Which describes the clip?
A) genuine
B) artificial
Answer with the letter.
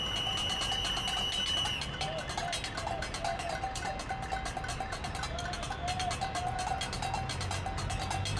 A